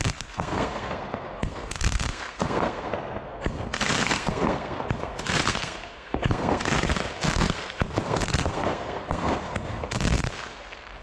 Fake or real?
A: fake